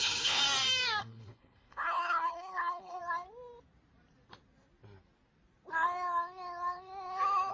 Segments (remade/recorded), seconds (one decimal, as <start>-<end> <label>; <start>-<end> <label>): 0.0-0.4 remade; 0.4-1.0 recorded; 1.0-3.0 remade; 3.0-7.5 recorded